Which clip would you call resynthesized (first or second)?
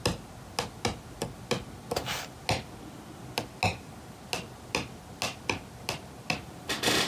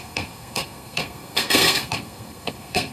second